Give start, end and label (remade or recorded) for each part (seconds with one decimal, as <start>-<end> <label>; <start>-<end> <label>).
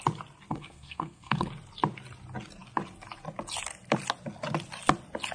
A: 0.0-0.5 recorded; 0.5-1.5 remade; 1.5-5.3 recorded